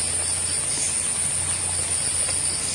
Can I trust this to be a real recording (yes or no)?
yes